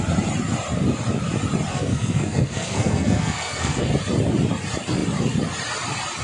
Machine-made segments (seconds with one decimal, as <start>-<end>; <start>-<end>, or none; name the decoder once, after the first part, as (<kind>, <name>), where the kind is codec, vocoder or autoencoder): 1.7-3.9 (codec, SNAC)